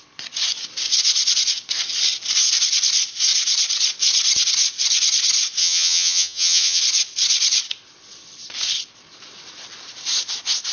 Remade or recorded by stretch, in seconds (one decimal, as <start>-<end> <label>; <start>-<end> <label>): 0.0-5.6 recorded; 5.6-6.8 remade; 6.8-10.7 recorded